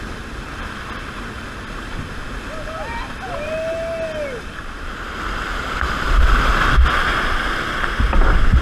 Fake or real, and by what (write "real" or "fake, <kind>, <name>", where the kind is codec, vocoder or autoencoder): real